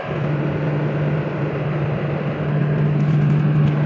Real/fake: real